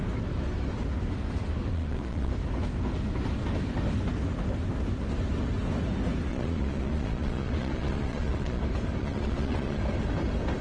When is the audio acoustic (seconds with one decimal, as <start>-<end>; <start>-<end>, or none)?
0.0-1.7; 2.3-6.3; 8.6-9.0; 9.8-10.6